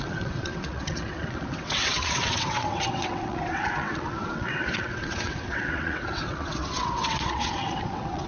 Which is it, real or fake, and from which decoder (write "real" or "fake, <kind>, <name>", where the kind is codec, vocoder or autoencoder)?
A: fake, vocoder, WaveNeXt